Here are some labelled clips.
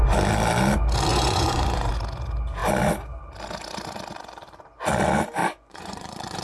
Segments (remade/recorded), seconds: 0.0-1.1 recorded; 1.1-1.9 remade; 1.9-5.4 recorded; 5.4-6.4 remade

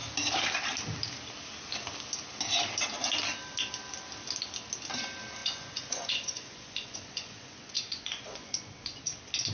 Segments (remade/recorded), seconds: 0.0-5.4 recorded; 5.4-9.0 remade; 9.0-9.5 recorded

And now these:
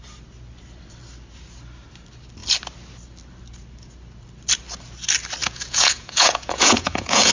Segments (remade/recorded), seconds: 0.0-5.4 recorded; 5.4-7.3 remade

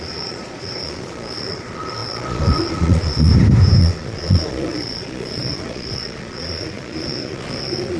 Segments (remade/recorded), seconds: 0.0-3.3 remade; 3.3-3.8 recorded; 3.8-8.0 remade

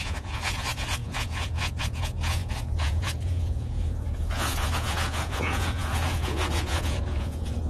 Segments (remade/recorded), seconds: 0.0-7.7 remade